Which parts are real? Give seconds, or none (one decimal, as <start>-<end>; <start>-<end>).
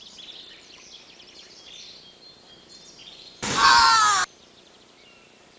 0.0-3.0; 3.7-5.6